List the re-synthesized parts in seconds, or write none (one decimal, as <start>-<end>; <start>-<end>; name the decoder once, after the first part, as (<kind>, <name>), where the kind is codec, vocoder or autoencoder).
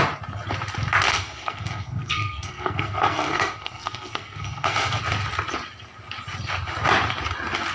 1.1-5.0 (codec, SNAC)